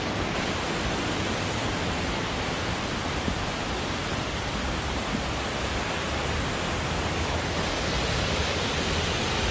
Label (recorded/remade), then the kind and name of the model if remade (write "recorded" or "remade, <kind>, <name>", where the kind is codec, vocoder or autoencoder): recorded